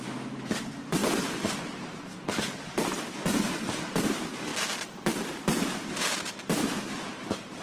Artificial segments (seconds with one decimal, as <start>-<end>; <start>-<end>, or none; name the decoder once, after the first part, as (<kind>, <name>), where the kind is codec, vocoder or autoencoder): 0.0-4.5 (vocoder, BigVGAN v2); 5.9-7.6